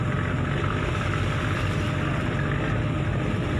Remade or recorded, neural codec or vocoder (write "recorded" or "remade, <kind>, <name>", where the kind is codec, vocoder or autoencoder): remade, vocoder, BigVGAN v2